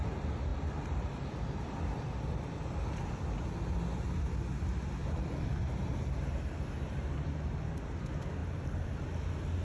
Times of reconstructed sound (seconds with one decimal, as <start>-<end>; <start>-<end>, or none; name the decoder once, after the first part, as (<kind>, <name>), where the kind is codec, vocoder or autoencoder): 0.5-1.3 (vocoder, BigVGAN v2); 5.0-5.6; 8.4-9.0